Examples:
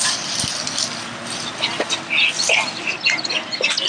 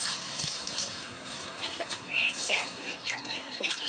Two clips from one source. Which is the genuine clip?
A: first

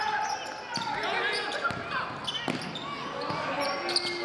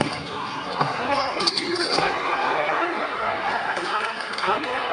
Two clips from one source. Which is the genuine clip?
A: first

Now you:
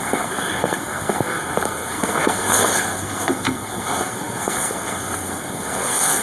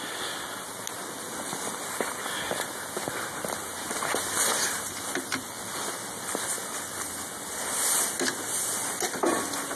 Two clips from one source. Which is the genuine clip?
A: second